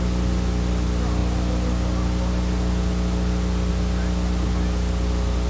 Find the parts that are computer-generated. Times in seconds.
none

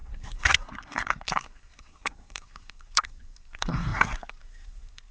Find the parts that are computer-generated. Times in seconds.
0.0-5.1 (codec, SNAC)

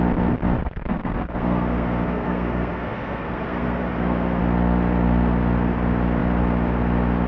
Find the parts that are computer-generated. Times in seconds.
0.6-4.4 (codec, SNAC)

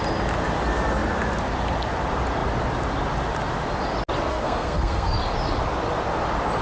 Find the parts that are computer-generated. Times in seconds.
4.3-5.1 (codec, SNAC)